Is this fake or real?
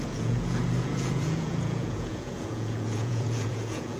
fake